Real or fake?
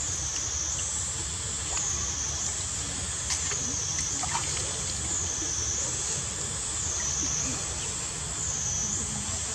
real